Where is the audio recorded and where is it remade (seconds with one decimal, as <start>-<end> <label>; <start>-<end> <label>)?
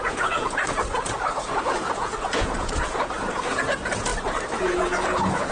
0.0-4.1 remade; 4.1-4.6 recorded; 4.6-5.5 remade